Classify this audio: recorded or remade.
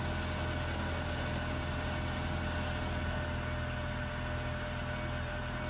recorded